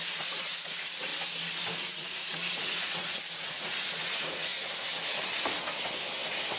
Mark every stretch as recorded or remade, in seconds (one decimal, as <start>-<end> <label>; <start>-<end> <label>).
0.0-1.1 remade; 1.1-1.9 recorded; 1.9-4.5 remade; 4.5-6.6 recorded